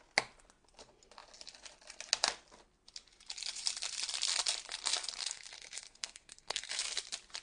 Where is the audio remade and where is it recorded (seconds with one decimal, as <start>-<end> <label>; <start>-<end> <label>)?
0.0-5.2 recorded; 5.2-6.8 remade; 6.8-7.4 recorded